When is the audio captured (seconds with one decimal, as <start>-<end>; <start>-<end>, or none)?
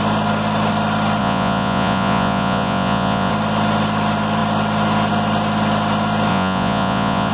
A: 0.0-1.2; 3.3-6.3